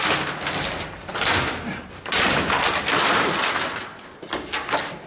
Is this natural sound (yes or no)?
yes